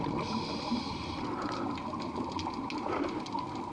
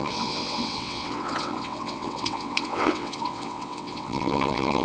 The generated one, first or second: second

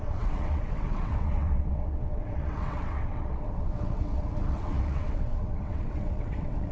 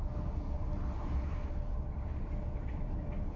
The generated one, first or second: first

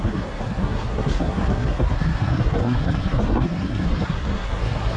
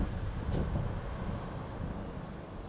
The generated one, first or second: first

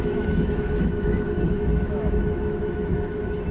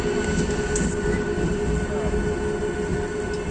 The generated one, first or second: first